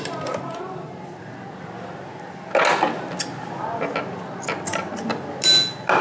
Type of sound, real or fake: real